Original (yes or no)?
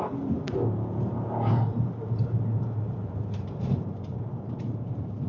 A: no